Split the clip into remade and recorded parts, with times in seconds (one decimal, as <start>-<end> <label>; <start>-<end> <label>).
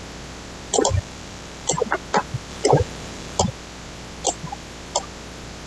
0.0-0.7 recorded; 0.7-1.7 remade; 1.7-2.5 recorded; 2.5-3.4 remade; 3.4-5.7 recorded